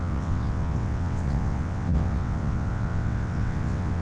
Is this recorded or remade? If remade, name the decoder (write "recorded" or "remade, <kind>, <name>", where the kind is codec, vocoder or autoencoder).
remade, vocoder, WaveNeXt